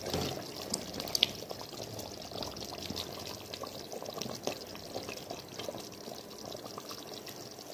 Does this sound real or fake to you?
real